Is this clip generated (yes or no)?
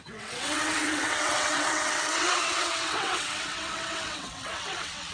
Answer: yes